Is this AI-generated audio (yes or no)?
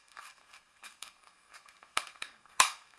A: yes